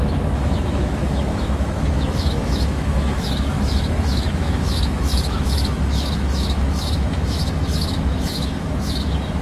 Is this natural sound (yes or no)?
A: no